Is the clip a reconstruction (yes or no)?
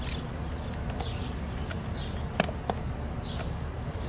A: no